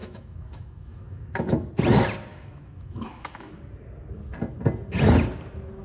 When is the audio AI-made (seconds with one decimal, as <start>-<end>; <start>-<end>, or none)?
0.0-1.7; 2.3-3.6

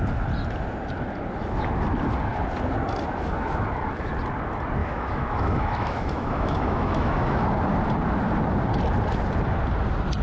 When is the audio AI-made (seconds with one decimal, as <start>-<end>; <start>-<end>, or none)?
4.8-7.4

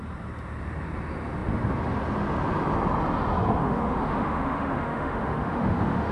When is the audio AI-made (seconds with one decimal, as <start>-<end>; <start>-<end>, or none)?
3.6-6.1

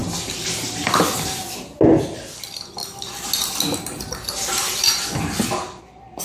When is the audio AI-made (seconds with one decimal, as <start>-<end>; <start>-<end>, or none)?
none

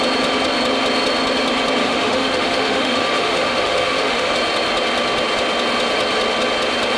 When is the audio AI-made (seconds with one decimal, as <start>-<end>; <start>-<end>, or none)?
1.8-4.3

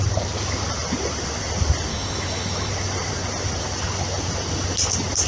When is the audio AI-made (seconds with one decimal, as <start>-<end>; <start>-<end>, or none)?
1.9-2.7

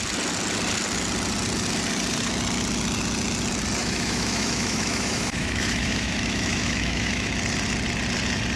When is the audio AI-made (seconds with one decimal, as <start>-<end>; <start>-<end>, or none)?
3.8-7.3

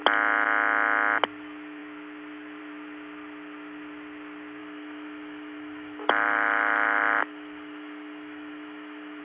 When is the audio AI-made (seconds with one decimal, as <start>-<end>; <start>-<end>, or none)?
4.6-9.2